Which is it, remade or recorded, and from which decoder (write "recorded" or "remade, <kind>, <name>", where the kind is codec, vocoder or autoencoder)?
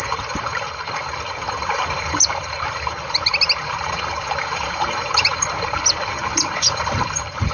remade, vocoder, BigVGAN v2